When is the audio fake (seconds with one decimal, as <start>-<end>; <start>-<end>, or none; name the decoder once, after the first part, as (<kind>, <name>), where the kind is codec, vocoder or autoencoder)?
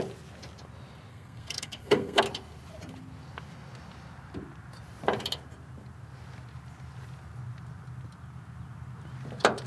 1.1-2.2 (codec, SNAC)